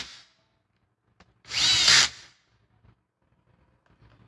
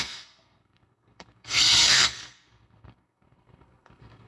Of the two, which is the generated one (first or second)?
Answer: second